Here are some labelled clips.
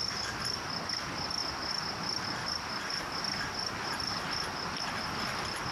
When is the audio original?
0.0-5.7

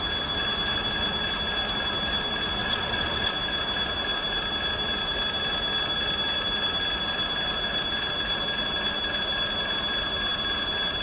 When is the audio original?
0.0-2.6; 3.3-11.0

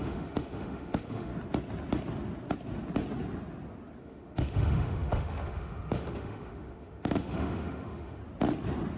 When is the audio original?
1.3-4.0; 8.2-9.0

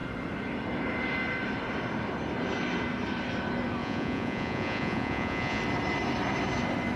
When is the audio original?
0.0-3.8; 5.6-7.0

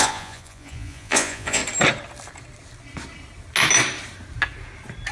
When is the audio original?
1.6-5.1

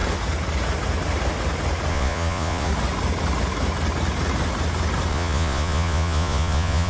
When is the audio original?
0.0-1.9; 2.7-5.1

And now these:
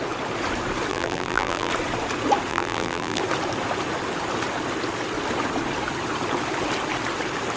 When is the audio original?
0.0-0.9; 1.7-2.5; 3.2-7.6